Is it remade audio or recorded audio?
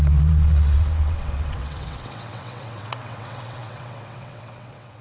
remade